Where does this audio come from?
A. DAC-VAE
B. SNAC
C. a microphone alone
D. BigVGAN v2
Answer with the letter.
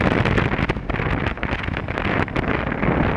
C